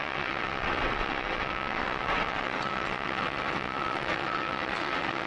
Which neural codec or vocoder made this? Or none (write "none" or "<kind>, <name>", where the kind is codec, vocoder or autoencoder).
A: vocoder, WaveNeXt